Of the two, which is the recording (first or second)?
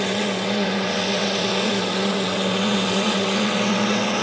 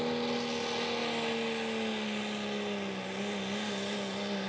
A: second